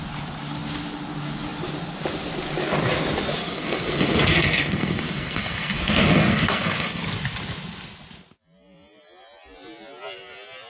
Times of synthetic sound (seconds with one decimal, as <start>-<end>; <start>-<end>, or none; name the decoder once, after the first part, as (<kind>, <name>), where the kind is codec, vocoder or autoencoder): 3.4-7.0 (codec, SNAC)